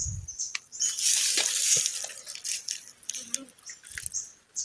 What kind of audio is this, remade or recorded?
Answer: recorded